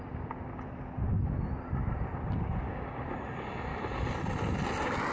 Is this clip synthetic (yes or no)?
no